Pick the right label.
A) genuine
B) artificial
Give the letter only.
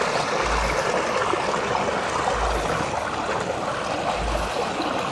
A